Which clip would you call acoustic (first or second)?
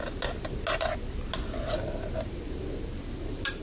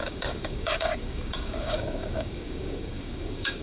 first